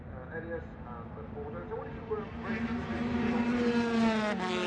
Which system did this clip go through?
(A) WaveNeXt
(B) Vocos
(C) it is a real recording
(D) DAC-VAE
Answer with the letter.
C